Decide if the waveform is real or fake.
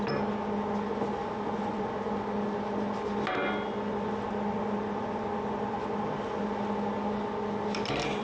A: real